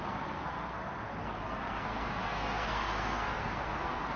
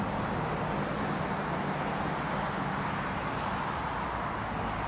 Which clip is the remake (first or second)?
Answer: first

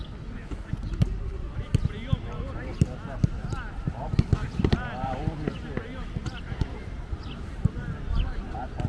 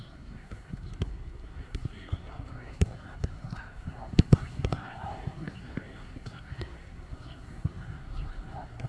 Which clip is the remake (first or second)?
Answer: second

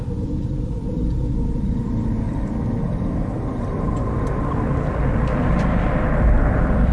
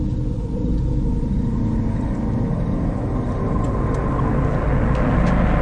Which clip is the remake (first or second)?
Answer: first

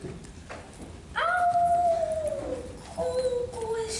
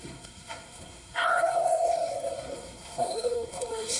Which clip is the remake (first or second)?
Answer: second